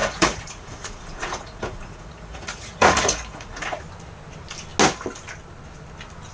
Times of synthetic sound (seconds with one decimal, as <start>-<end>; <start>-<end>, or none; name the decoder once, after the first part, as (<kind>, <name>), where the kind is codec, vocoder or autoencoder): 0.0-3.8 (vocoder, Vocos)